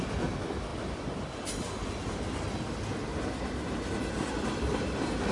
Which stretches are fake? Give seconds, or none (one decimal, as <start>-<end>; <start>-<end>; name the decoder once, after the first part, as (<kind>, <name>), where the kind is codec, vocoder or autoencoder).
none